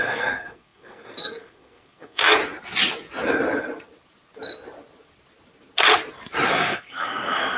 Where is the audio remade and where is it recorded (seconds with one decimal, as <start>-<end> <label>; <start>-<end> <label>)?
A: 0.0-2.4 remade; 2.4-6.5 recorded; 6.5-7.6 remade